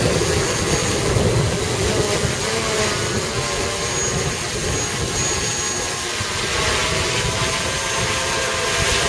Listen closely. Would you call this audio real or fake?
real